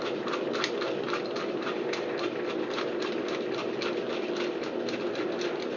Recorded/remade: recorded